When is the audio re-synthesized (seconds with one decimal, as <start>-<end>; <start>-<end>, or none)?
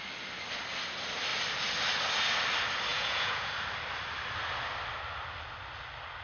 2.9-3.5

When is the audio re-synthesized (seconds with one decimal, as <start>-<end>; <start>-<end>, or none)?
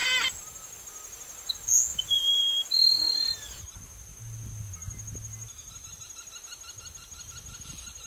1.9-2.4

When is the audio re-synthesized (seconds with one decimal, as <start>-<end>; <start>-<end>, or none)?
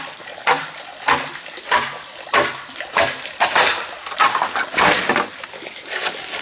0.9-4.0